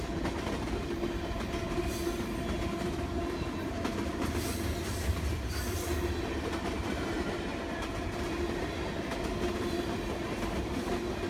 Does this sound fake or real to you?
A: real